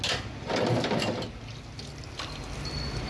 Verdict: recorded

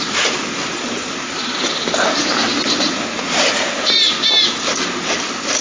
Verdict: recorded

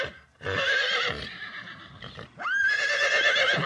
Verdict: remade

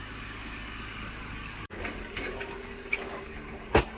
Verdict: remade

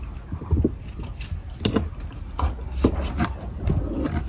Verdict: recorded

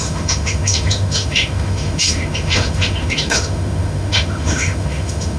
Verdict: remade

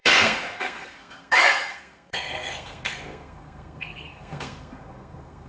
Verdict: remade